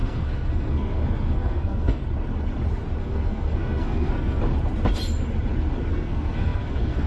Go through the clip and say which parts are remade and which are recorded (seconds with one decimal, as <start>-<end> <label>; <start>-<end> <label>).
0.0-2.0 remade; 2.0-3.0 recorded; 3.0-4.4 remade; 4.4-5.9 recorded; 5.9-7.1 remade